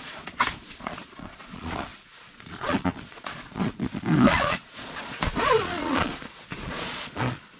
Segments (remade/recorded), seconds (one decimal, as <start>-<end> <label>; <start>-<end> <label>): 0.0-7.6 remade